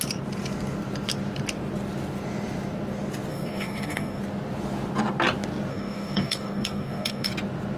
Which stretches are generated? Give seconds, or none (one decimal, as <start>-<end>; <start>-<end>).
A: 3.3-4.2; 5.7-7.3